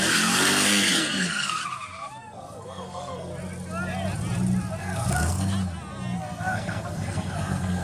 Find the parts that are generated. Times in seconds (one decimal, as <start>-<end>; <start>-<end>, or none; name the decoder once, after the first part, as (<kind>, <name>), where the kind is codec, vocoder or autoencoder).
0.0-1.6 (codec, SNAC); 2.2-3.3; 4.8-5.5; 6.2-7.8